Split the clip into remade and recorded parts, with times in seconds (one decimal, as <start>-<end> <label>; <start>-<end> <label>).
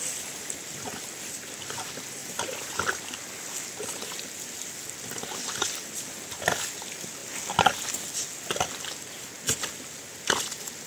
0.0-2.2 recorded; 2.2-2.8 remade; 2.8-10.9 recorded